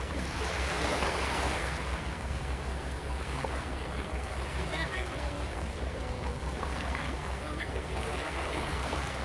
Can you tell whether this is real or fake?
fake